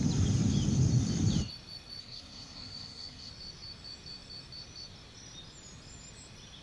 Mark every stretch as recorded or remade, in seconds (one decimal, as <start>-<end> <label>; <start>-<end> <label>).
0.0-2.0 recorded; 2.0-3.3 remade; 3.3-6.6 recorded